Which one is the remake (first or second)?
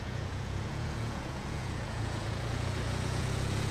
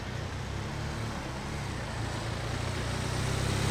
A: first